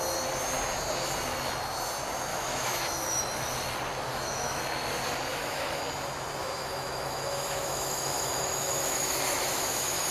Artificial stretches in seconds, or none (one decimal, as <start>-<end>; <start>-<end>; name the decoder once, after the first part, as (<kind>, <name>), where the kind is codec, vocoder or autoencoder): 2.3-3.2 (autoencoder, DAC-VAE); 4.1-4.6; 5.3-5.8; 6.4-10.1